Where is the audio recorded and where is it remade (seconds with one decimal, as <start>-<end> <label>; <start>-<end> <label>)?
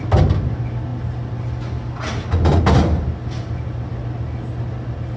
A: 0.0-5.2 recorded